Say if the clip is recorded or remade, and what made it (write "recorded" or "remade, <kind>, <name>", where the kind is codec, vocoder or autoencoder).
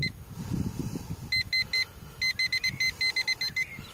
recorded